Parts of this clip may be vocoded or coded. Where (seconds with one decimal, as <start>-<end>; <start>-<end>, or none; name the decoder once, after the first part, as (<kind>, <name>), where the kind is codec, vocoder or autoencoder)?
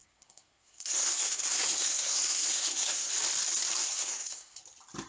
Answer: 0.0-3.1 (codec, SNAC); 3.8-4.6